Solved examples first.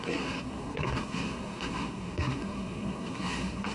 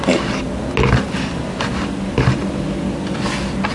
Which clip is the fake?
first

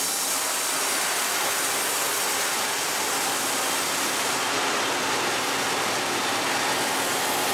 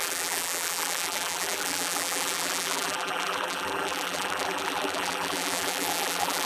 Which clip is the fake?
second